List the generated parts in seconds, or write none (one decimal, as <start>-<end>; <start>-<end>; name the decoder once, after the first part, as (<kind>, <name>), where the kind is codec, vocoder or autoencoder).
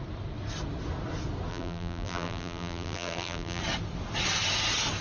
1.5-3.6 (vocoder, BigVGAN v2)